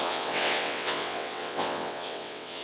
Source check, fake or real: fake